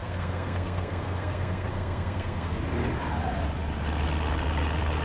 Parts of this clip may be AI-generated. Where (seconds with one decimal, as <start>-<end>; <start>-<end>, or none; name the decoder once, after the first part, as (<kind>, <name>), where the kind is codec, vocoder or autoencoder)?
0.0-2.6 (codec, SNAC)